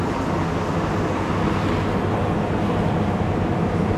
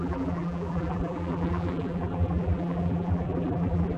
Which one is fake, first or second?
second